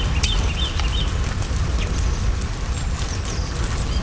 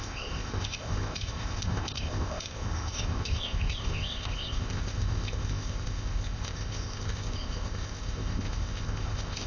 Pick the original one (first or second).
first